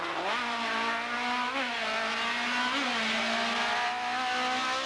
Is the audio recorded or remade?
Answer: recorded